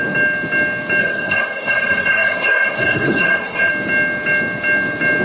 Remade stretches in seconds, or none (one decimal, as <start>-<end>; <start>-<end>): 1.0-3.7